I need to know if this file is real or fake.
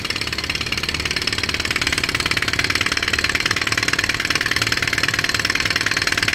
real